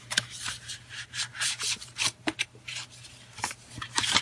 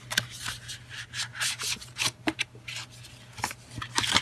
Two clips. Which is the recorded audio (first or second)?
second